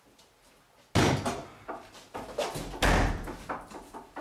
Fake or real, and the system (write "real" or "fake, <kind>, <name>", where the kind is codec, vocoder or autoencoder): real